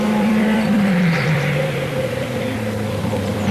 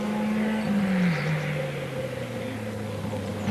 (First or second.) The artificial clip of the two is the first